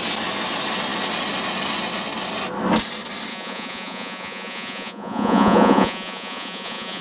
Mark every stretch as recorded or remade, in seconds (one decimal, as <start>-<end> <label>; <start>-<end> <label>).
0.0-3.3 recorded; 3.3-7.0 remade